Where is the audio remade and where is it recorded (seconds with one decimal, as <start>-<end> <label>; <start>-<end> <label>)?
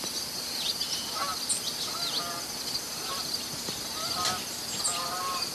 0.0-5.5 recorded